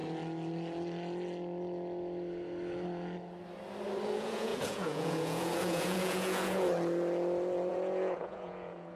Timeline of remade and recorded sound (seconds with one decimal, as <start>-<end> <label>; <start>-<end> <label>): 0.0-4.1 recorded; 4.1-6.7 remade; 6.7-7.7 recorded; 7.7-9.0 remade